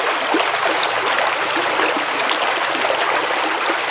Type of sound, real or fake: real